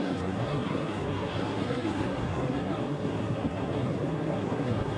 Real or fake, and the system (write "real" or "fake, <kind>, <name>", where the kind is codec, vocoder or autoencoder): fake, codec, SNAC